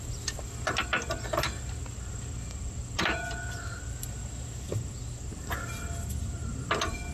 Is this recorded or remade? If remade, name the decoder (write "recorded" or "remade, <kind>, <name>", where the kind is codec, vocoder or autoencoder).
recorded